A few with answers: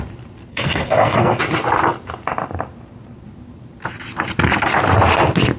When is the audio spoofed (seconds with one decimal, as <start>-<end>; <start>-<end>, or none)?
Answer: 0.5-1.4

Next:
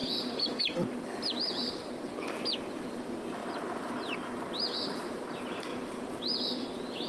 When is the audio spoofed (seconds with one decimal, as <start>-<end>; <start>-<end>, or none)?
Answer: 0.0-0.6; 5.7-6.4

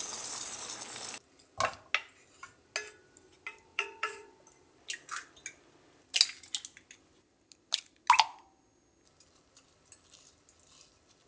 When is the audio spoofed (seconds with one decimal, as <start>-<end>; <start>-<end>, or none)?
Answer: 3.7-4.3

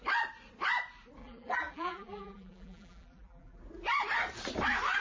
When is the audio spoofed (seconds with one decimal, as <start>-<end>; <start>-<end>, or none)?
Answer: 1.2-3.6

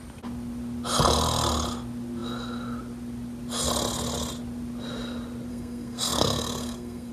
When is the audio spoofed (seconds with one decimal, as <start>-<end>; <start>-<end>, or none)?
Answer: 5.5-7.1

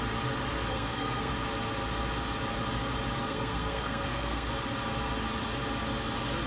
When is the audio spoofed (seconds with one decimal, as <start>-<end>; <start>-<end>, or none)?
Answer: 0.7-1.3; 3.3-4.5